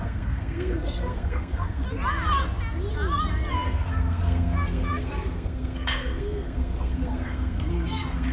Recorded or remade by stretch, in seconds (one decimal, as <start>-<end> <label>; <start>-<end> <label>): 0.0-1.8 remade; 1.8-3.5 recorded; 3.5-8.3 remade